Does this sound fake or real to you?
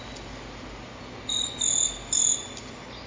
real